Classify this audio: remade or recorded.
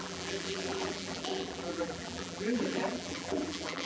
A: remade